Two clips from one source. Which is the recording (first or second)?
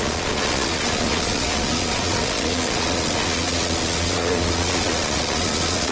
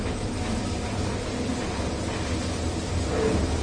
second